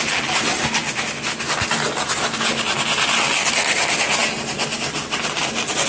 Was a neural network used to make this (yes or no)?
no